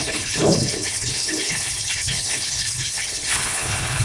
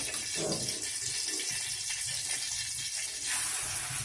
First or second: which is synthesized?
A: first